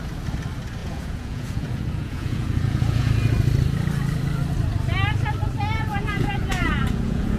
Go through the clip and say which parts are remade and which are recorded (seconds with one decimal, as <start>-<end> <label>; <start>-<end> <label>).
0.0-0.8 recorded; 0.8-3.1 remade; 3.1-5.9 recorded; 5.9-7.4 remade